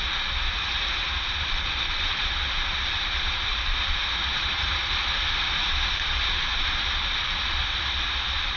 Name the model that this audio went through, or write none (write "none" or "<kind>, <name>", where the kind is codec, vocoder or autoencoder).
vocoder, BigVGAN v2